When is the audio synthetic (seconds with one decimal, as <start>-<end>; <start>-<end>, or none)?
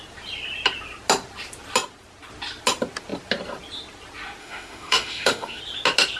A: 4.4-5.6